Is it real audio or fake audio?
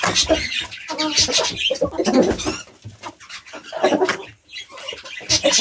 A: real